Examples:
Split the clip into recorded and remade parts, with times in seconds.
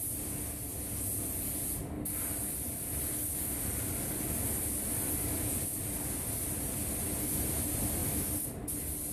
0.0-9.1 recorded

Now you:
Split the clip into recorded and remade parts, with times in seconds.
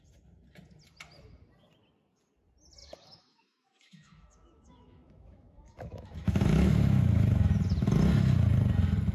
0.0-2.8 recorded; 2.8-7.5 remade; 7.5-9.1 recorded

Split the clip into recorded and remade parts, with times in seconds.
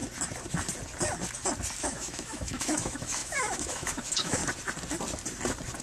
0.0-1.8 recorded; 1.8-4.4 remade; 4.4-5.8 recorded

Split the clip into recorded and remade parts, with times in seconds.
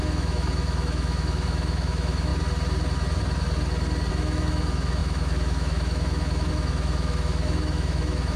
0.0-2.3 remade; 2.3-4.1 recorded; 4.1-8.4 remade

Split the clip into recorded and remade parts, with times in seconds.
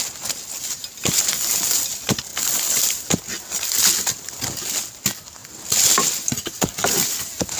0.0-7.6 recorded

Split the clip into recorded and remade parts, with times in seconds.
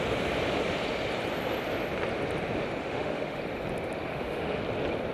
0.0-2.8 recorded; 2.8-3.4 remade; 3.4-4.1 recorded; 4.1-4.6 remade; 4.6-5.1 recorded